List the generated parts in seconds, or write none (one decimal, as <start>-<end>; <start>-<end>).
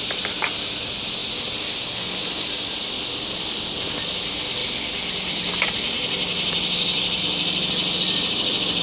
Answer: 0.0-8.8